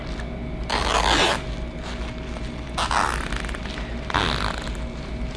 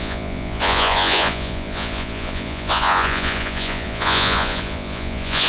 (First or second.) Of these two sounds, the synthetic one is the second